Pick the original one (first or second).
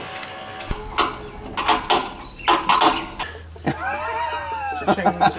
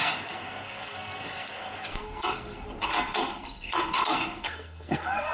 first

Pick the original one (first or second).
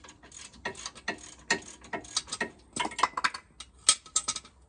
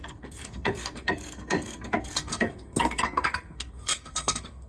first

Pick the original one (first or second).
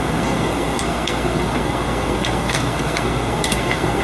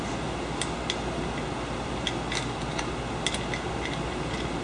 second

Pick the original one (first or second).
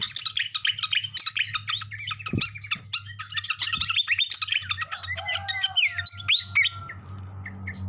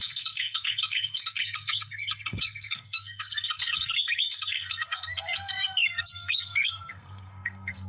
first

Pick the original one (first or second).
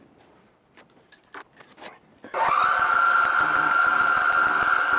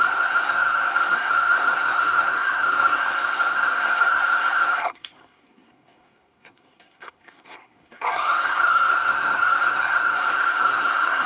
first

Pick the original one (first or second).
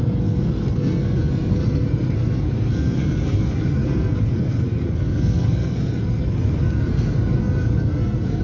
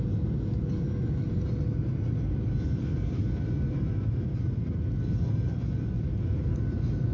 second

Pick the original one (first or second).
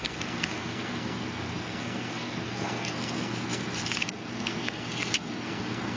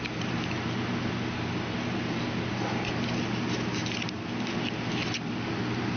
second